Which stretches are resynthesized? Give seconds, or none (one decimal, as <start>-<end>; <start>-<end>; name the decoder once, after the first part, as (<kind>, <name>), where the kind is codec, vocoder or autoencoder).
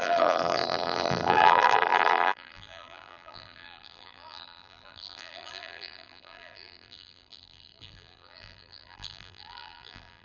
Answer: 0.0-10.2 (vocoder, BigVGAN v2)